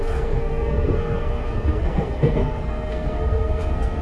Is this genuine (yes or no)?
no